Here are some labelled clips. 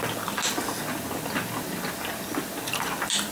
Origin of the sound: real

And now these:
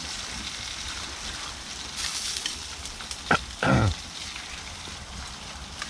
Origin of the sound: real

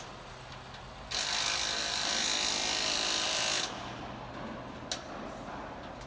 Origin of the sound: real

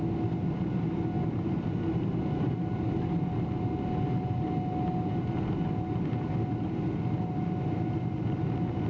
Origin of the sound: real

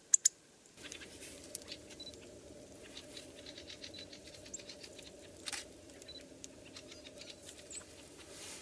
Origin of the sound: real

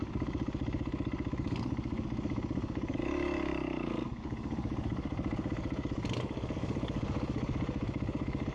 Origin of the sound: fake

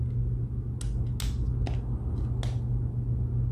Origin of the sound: real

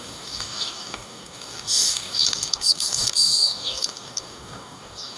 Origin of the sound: fake